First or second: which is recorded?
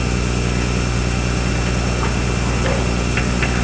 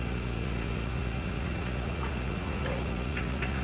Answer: first